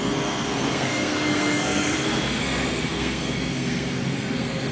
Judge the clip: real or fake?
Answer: fake